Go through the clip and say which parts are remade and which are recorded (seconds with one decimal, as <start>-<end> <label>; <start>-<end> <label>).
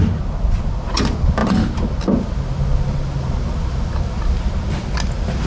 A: 0.0-5.5 recorded